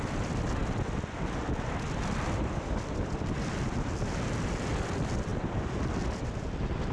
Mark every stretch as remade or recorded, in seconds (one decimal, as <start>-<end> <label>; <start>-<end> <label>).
0.0-6.9 recorded